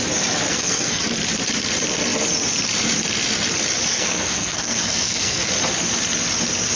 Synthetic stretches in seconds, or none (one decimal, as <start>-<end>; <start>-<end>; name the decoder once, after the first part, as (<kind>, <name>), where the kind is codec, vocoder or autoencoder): 0.5-1.0 (codec, SNAC); 3.9-5.5